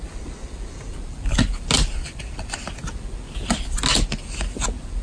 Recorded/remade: recorded